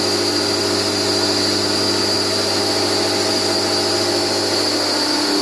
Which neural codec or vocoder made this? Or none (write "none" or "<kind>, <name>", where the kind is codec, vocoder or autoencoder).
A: none